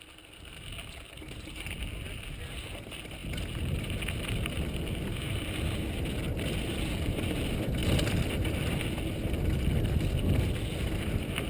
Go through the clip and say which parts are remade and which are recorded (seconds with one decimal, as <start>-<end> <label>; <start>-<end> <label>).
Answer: 0.0-11.5 recorded